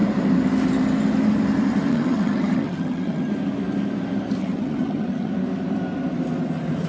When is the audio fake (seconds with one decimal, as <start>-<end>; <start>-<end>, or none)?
1.9-3.3; 4.4-5.3